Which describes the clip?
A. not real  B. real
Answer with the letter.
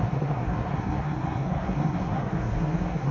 A